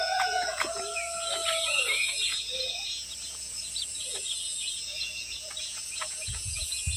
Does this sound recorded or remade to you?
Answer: remade